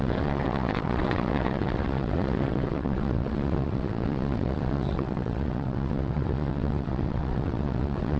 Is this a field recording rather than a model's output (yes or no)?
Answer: no